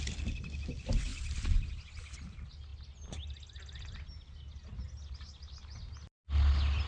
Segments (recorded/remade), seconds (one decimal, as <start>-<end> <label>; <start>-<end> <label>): 0.0-6.9 recorded